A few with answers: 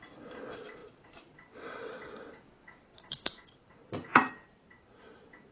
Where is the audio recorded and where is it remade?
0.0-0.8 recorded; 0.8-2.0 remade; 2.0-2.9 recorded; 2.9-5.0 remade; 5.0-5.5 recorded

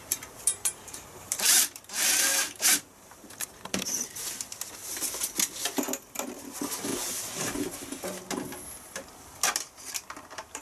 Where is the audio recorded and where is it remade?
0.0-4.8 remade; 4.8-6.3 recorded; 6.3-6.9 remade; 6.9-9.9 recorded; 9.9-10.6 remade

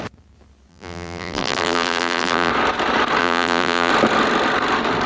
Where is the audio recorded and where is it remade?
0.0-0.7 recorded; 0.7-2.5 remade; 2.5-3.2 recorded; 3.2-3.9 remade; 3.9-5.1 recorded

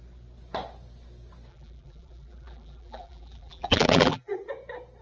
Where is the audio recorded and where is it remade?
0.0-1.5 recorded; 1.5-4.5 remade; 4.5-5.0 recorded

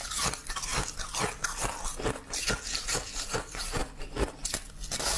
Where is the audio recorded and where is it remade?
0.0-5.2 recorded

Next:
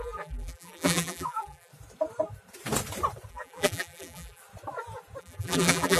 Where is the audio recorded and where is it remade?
0.0-1.7 remade; 1.7-3.3 recorded; 3.3-4.4 remade; 4.4-5.2 recorded; 5.2-6.0 remade